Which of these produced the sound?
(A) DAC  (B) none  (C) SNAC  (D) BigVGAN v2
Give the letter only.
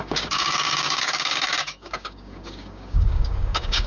A